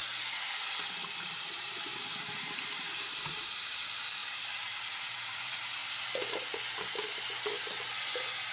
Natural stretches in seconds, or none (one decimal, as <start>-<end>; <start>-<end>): 0.0-1.2; 5.8-6.7